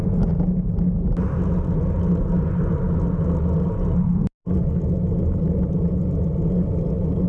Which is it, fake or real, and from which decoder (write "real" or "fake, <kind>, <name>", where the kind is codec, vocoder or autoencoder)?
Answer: real